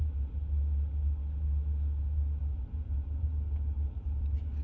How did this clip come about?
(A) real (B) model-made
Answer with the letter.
A